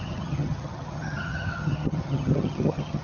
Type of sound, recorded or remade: remade